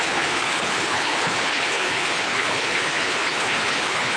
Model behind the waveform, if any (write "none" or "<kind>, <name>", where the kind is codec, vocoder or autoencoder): codec, HILCodec